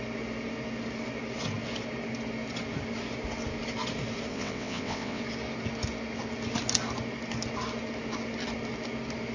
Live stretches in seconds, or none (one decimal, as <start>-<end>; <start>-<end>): 0.0-4.3; 5.2-9.3

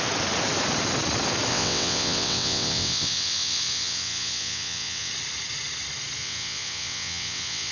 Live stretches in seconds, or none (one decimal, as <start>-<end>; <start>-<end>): 0.0-1.5; 5.1-6.2

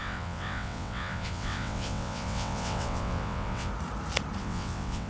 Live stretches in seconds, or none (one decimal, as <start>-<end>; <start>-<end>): 3.7-4.4

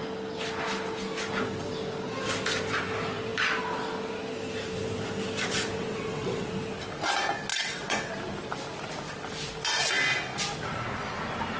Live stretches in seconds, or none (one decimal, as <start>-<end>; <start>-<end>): 0.0-5.8; 6.5-7.5; 8.1-11.6

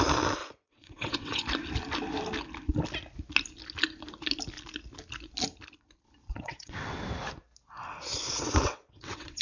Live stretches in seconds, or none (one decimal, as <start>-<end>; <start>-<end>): 0.0-0.4; 1.4-6.2; 7.0-8.1

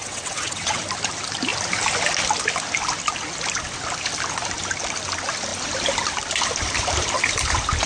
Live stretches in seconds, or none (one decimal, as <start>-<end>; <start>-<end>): 0.8-7.9